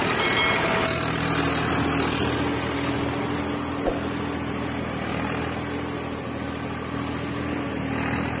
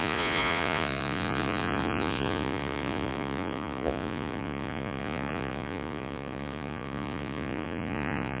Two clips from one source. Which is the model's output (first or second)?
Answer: second